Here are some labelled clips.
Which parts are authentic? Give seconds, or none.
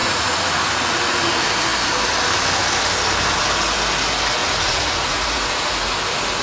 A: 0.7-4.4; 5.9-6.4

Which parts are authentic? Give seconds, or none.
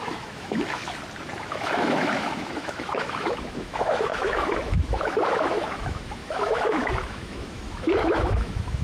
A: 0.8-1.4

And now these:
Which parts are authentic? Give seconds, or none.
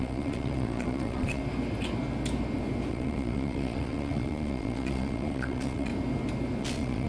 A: 1.4-2.9; 5.9-6.6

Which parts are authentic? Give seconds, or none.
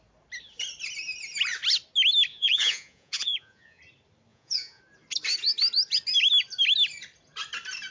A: 0.0-2.3; 3.8-4.3; 4.8-7.9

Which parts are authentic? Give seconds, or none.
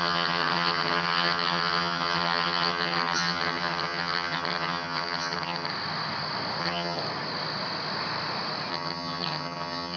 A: 5.7-6.6; 7.0-8.7